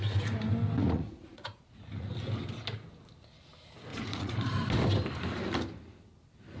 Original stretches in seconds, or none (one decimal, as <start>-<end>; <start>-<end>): 0.0-0.8; 2.1-3.9; 4.5-6.6